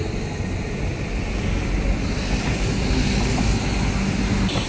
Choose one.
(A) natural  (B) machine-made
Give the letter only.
A